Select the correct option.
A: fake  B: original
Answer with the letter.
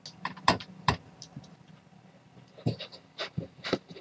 B